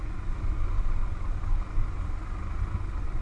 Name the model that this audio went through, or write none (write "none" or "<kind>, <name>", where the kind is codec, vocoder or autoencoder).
none